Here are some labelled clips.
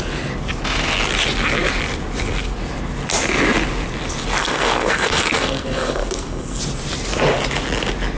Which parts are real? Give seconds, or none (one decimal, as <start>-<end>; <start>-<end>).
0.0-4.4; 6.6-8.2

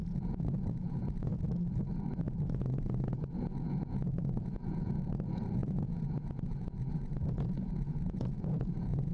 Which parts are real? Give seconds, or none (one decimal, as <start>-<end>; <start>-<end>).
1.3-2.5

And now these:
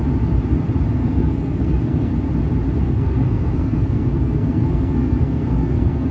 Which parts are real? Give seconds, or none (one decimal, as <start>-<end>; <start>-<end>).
0.0-0.9; 2.1-2.8